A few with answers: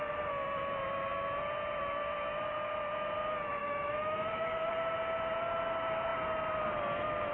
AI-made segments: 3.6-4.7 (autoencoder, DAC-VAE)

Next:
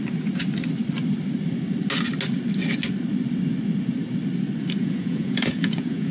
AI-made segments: 4.8-6.1 (vocoder, Vocos)

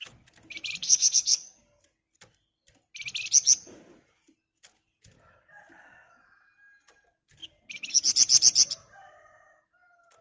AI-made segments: 0.8-1.6 (codec, SNAC)

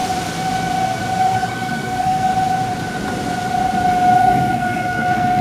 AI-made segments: 1.2-2.3 (codec, SNAC); 4.2-5.4

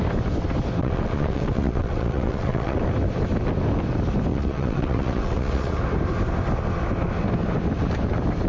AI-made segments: 0.8-2.8 (vocoder, WaveNeXt); 4.3-5.8

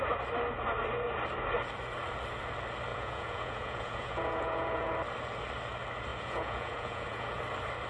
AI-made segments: 2.9-4.9 (vocoder, Vocos); 6.1-7.4

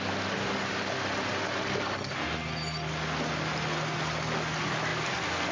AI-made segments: none